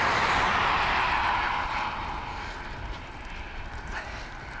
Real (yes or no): yes